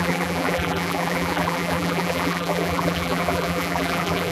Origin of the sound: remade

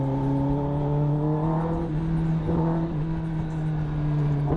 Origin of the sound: recorded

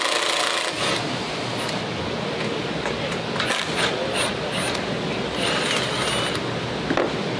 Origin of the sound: recorded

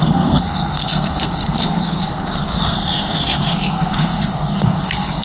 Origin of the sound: remade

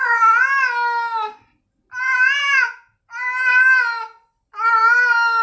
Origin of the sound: recorded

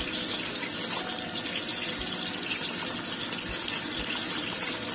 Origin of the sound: recorded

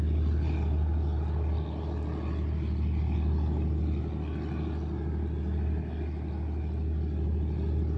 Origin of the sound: recorded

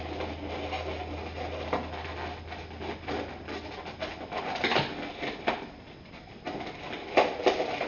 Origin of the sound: recorded